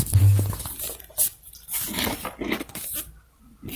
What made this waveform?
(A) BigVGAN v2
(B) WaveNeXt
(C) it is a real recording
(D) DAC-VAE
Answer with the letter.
C